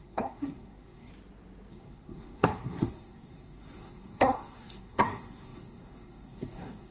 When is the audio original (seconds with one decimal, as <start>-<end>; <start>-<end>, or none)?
1.1-1.7